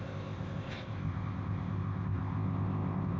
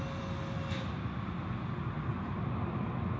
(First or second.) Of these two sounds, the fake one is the first